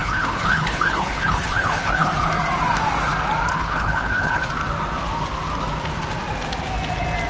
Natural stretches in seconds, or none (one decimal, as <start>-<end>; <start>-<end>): 2.3-3.5; 4.5-7.3